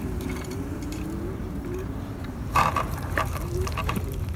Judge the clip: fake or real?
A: fake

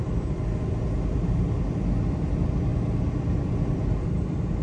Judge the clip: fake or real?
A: real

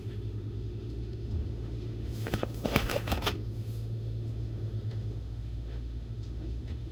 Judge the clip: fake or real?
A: fake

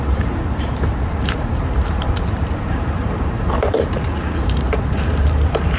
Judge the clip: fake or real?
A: fake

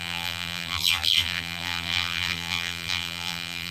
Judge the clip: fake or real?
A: fake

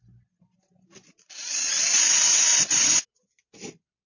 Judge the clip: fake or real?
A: real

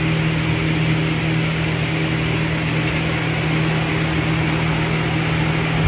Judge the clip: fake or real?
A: real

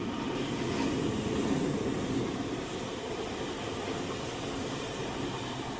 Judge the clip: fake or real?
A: real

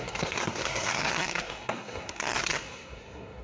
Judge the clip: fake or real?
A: fake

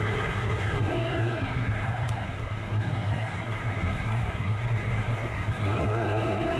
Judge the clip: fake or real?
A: fake